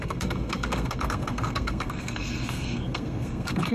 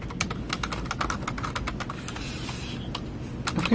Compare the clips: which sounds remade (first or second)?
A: first